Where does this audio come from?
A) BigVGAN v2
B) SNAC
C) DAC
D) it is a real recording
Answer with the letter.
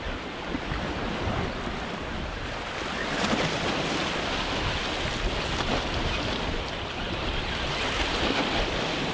D